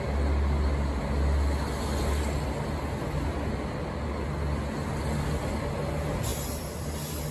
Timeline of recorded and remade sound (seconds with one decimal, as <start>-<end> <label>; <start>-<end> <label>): 0.0-7.3 recorded